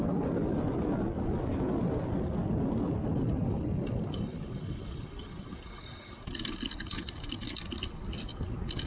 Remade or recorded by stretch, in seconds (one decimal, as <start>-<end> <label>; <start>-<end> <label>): 0.0-8.9 recorded